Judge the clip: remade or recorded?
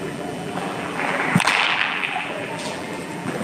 remade